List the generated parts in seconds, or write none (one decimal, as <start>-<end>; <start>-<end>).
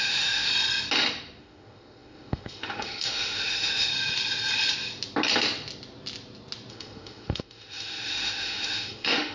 0.0-0.5; 1.4-3.9; 6.7-9.3